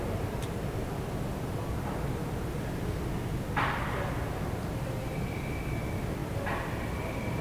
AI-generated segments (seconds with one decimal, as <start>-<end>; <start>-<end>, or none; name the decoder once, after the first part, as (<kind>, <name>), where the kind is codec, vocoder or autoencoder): 0.0-0.8 (vocoder, BigVGAN v2); 5.2-7.4